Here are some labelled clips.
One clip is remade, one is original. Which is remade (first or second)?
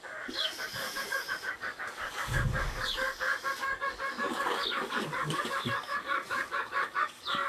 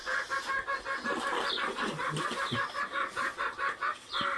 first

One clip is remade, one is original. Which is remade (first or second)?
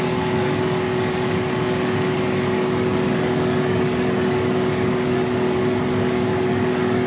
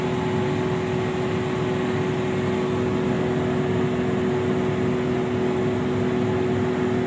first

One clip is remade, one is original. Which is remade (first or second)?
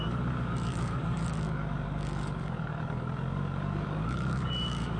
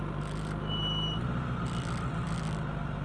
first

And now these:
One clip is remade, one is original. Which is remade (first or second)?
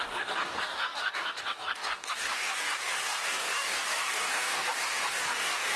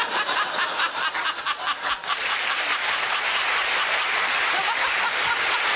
first